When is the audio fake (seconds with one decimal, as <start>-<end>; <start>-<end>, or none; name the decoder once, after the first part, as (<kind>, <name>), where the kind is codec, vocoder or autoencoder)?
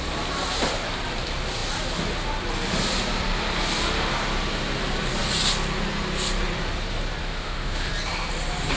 7.2-7.9 (autoencoder, DAC-VAE)